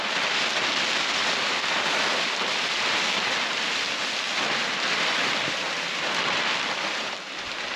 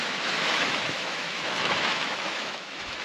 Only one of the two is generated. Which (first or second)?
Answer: second